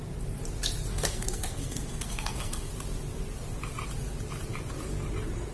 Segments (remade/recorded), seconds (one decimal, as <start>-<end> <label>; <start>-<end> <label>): 0.0-0.9 recorded; 0.9-2.7 remade; 2.7-5.5 recorded